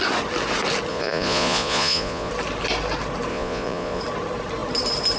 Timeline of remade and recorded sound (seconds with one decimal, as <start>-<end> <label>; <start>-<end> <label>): 0.0-0.9 recorded; 0.9-2.3 remade; 2.3-3.3 recorded; 3.3-4.0 remade; 4.0-5.2 recorded